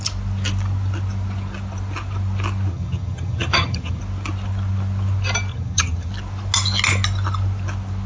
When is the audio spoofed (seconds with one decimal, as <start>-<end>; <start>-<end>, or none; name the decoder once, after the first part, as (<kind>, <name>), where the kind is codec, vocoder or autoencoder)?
2.7-4.0 (vocoder, HiFi-GAN); 5.5-6.1